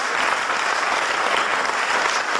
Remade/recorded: recorded